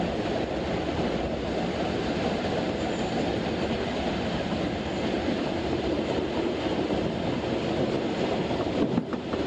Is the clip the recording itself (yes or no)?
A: yes